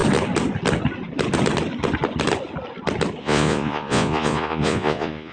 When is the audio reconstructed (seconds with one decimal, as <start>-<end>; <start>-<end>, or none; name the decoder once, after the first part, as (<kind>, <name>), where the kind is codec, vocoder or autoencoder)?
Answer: 3.2-5.3 (vocoder, Vocos)